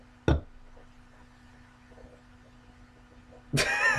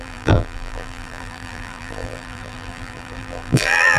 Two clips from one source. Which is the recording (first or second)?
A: first